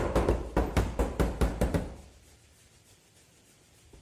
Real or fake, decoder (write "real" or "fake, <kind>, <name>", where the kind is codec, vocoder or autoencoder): real